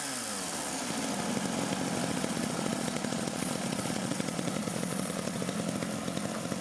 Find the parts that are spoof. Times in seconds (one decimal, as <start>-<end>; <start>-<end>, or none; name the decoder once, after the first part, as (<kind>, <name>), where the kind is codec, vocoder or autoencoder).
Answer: 2.1-5.4 (vocoder, Vocos)